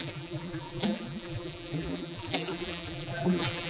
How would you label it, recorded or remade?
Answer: remade